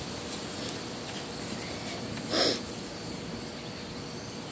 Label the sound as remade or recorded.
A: recorded